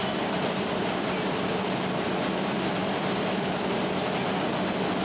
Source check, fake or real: real